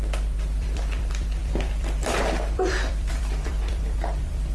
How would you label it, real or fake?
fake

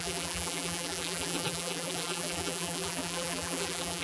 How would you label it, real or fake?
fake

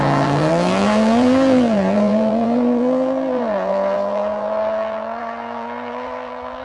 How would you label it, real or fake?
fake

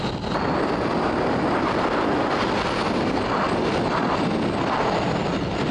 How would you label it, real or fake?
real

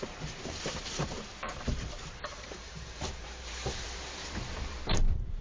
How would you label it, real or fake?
fake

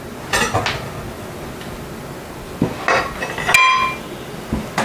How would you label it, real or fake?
real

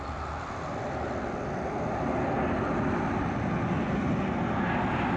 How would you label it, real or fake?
real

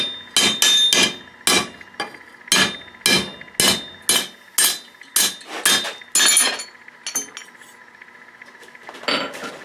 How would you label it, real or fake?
real